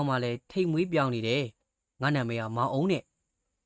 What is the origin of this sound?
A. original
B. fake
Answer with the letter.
A